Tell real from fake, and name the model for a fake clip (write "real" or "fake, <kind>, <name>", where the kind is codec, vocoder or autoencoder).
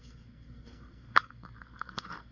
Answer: fake, codec, SNAC